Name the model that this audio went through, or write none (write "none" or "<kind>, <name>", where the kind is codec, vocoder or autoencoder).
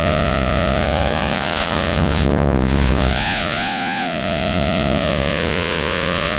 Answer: vocoder, Vocos